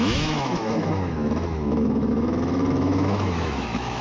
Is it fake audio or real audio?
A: fake